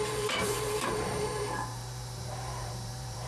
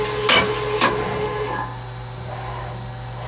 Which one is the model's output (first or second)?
first